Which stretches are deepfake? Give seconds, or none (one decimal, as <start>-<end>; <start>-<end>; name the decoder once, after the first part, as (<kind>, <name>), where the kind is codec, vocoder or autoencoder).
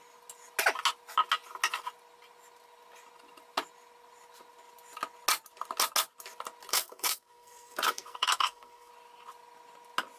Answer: 6.7-8.9 (codec, SNAC)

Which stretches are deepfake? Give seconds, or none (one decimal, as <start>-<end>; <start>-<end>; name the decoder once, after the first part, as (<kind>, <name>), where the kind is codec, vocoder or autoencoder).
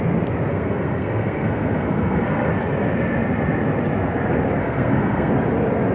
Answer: 0.5-2.5 (codec, SNAC); 4.6-5.3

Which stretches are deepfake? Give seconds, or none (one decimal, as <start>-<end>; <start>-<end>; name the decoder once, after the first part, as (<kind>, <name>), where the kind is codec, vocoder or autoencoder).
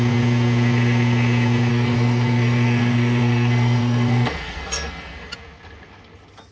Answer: 1.7-5.3 (codec, SNAC)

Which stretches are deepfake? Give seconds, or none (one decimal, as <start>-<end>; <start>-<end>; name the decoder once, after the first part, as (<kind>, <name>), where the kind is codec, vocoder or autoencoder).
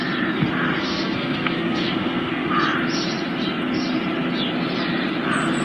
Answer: 0.8-2.5 (codec, SNAC)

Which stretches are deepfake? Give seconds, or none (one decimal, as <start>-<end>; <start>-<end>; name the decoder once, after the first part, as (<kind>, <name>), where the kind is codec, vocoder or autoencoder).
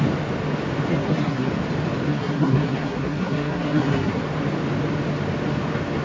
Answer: 0.9-1.5 (codec, SNAC); 2.1-4.2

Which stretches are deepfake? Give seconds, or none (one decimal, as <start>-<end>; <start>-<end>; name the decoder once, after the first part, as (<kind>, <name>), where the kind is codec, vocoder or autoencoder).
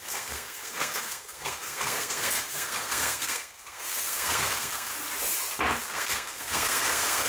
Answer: 0.0-4.9 (codec, SNAC); 5.8-7.3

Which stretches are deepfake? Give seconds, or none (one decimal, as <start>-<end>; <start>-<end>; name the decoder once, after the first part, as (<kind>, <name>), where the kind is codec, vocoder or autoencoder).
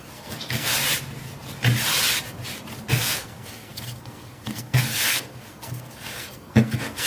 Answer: 0.0-0.7 (codec, SNAC); 2.9-7.1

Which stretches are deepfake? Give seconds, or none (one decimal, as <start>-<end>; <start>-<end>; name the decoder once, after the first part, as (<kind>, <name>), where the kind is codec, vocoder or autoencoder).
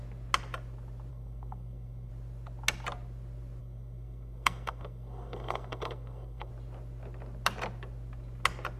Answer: 1.1-2.1 (codec, SNAC); 3.6-6.5